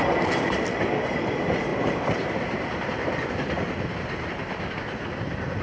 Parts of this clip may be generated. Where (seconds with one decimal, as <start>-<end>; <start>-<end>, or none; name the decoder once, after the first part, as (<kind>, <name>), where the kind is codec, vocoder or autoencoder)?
1.7-3.3 (vocoder, BigVGAN v2)